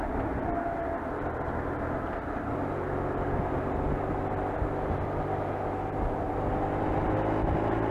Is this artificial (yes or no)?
no